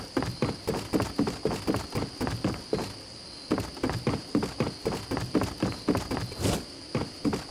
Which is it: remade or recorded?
recorded